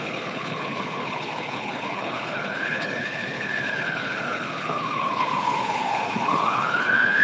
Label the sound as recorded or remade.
remade